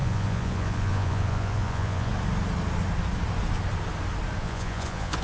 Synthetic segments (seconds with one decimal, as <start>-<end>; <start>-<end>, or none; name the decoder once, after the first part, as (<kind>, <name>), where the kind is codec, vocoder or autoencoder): 0.0-2.1 (vocoder, Vocos); 4.4-5.2